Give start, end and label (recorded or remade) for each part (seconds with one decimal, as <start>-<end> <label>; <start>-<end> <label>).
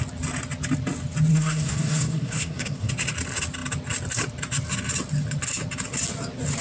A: 0.0-1.3 recorded; 1.3-2.9 remade; 2.9-6.6 recorded